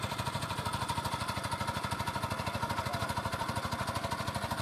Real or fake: fake